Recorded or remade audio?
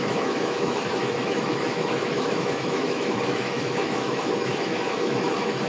remade